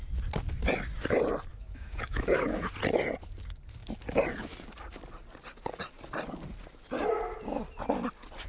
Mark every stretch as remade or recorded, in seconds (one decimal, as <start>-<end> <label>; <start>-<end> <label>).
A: 0.0-1.5 recorded; 1.5-2.7 remade; 2.7-8.5 recorded